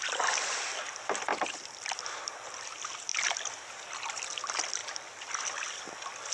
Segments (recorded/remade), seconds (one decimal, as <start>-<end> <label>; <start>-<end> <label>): 0.0-1.3 recorded; 1.3-2.1 remade; 2.1-3.1 recorded; 3.1-4.2 remade; 4.2-4.8 recorded; 4.8-5.8 remade; 5.8-6.3 recorded